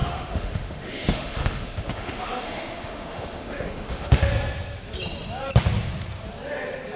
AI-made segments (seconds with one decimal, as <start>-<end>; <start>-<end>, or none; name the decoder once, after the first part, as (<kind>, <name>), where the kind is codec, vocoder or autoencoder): 0.0-4.3 (autoencoder, DAC-VAE)